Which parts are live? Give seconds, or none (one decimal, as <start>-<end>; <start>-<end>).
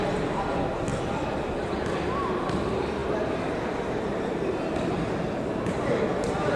0.0-6.6